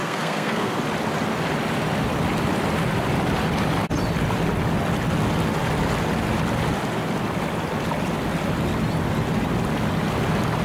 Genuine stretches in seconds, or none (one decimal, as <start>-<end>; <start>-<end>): 0.8-10.6